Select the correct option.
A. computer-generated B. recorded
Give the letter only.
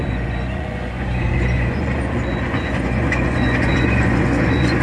A